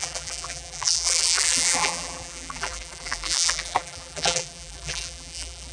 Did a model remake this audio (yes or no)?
yes